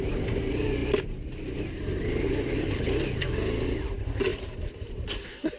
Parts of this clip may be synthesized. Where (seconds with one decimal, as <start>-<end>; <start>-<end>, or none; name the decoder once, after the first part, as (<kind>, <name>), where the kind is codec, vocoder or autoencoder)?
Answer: 0.8-2.8 (vocoder, BigVGAN v2)